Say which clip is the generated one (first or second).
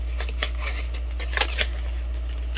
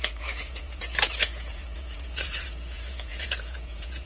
second